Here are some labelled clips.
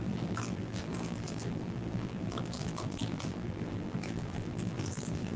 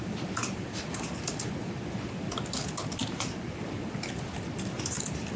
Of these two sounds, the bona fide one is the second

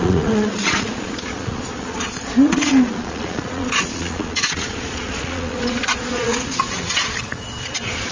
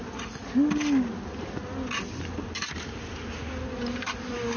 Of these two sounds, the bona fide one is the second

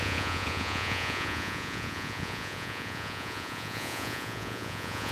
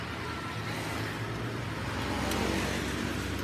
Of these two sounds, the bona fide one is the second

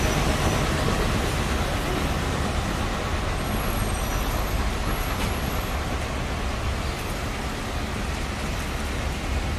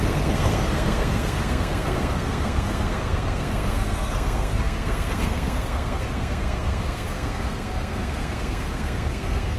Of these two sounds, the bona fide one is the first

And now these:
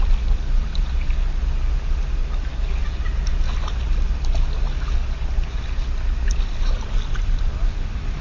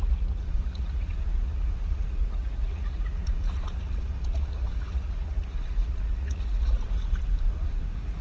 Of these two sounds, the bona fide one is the first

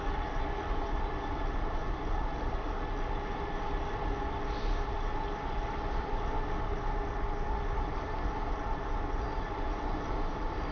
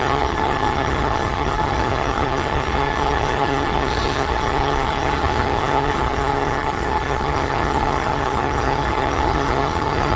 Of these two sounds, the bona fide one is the first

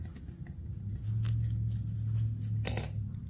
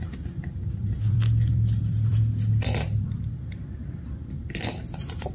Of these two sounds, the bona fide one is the first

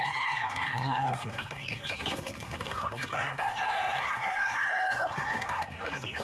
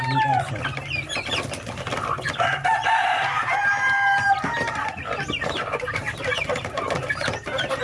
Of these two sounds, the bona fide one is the second